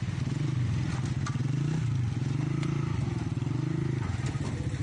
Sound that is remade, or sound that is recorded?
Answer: recorded